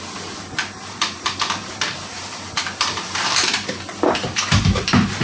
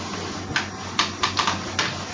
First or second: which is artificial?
first